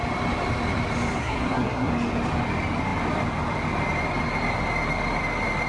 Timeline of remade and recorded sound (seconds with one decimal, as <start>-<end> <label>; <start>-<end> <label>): 0.0-1.2 recorded; 1.2-1.9 remade; 1.9-5.7 recorded